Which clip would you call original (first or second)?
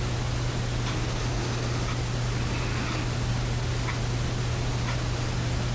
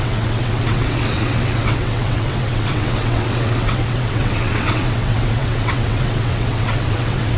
first